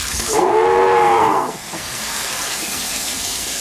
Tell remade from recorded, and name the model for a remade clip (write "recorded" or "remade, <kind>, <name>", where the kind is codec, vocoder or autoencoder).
remade, codec, SNAC